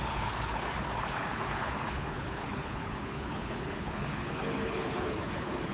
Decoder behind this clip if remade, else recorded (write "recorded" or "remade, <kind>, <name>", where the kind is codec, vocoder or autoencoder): remade, codec, HILCodec